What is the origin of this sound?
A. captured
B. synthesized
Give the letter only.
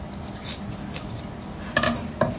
A